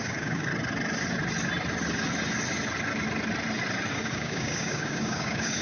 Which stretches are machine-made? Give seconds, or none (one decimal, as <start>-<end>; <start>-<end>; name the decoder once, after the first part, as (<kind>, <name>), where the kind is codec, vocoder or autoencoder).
0.0-0.5 (codec, DAC); 3.9-5.6